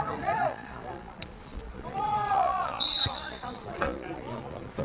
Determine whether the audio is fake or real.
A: fake